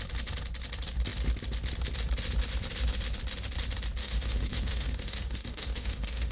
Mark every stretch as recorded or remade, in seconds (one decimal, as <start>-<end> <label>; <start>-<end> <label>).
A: 0.0-4.0 recorded; 4.0-6.3 remade